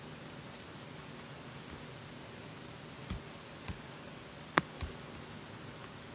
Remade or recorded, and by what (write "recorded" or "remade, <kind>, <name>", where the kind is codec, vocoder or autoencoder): recorded